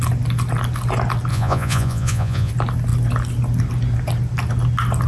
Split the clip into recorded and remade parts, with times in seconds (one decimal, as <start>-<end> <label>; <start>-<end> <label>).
0.0-1.3 recorded; 1.3-2.5 remade; 2.5-5.1 recorded